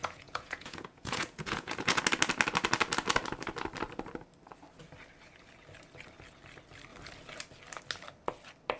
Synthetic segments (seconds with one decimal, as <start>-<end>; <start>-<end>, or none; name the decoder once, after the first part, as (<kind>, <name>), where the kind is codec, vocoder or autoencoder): 0.0-2.0 (vocoder, Vocos)